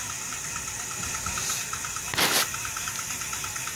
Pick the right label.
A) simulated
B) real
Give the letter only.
B